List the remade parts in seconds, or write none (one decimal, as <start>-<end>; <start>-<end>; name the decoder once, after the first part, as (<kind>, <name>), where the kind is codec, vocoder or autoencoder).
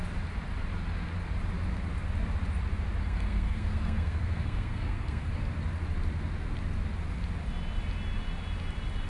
3.0-5.3 (codec, SNAC)